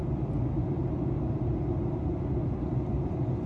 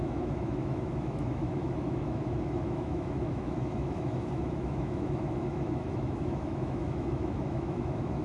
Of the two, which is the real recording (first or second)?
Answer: first